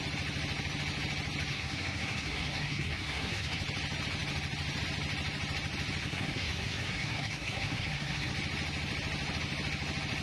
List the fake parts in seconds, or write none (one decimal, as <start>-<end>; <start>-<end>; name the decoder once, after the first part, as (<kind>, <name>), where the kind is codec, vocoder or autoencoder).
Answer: 1.5-3.6 (codec, SNAC); 6.0-8.3